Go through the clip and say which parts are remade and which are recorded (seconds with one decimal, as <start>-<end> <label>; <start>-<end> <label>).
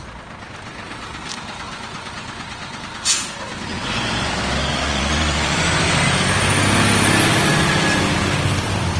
0.0-1.7 recorded; 1.7-2.8 remade; 2.8-3.7 recorded; 3.7-4.3 remade; 4.3-4.7 recorded; 4.7-5.8 remade; 5.8-9.0 recorded